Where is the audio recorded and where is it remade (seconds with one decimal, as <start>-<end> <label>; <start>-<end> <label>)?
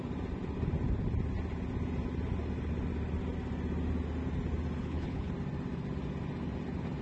0.0-4.8 recorded; 4.8-5.3 remade; 5.3-7.0 recorded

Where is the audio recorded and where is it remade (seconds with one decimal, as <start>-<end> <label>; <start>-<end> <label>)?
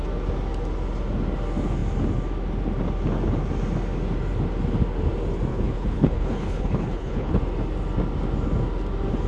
0.0-5.5 recorded; 5.5-7.4 remade; 7.4-9.3 recorded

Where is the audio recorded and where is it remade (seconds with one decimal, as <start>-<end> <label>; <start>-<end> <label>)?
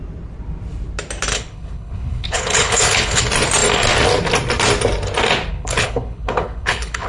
0.0-1.3 recorded; 1.3-3.2 remade; 3.2-5.5 recorded; 5.5-7.1 remade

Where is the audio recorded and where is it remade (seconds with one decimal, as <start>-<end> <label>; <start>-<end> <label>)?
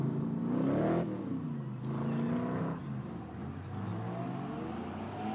0.0-5.3 recorded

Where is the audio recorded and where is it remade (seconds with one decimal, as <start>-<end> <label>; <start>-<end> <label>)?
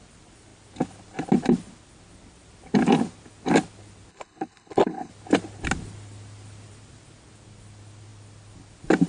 0.0-4.1 recorded; 4.1-5.1 remade; 5.1-9.1 recorded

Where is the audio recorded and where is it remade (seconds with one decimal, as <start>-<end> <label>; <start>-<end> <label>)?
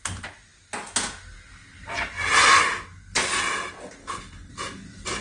0.0-4.0 recorded; 4.0-4.5 remade; 4.5-5.2 recorded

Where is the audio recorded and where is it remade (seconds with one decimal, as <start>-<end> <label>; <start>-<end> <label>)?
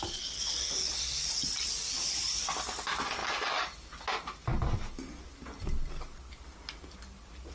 0.0-1.9 recorded; 1.9-2.4 remade; 2.4-7.5 recorded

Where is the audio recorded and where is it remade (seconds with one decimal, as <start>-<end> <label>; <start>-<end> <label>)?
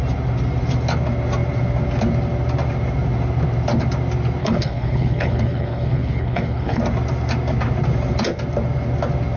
0.0-4.4 recorded; 4.4-6.8 remade; 6.8-9.4 recorded